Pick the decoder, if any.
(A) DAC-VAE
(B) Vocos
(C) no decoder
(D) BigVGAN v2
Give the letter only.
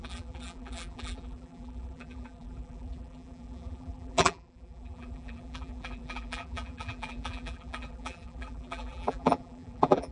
D